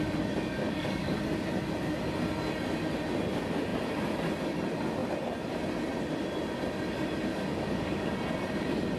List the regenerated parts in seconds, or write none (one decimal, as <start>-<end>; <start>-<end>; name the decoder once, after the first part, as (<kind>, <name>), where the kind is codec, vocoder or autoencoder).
0.6-1.2 (codec, DAC); 7.3-8.1